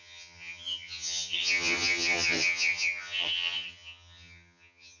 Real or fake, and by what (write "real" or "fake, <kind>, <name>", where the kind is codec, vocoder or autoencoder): fake, vocoder, HiFi-GAN